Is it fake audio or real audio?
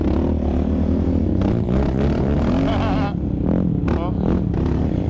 real